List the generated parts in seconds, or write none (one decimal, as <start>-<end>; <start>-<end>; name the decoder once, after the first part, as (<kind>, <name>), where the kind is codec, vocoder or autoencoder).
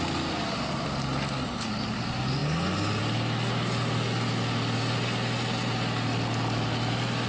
none